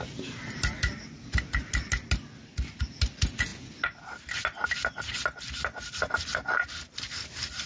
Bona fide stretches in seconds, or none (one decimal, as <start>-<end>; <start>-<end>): 0.0-7.7